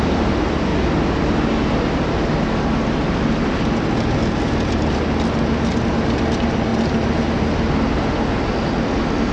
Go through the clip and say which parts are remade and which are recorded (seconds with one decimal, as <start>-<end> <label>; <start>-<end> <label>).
0.0-0.7 remade; 0.7-3.2 recorded; 3.2-4.2 remade; 4.2-6.0 recorded; 6.0-6.7 remade; 6.7-8.5 recorded; 8.5-9.3 remade